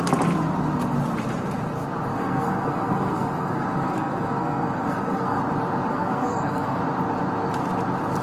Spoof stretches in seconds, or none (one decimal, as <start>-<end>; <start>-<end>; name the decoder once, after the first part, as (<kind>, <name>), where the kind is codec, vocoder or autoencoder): 2.1-5.4 (codec, SNAC); 5.9-6.8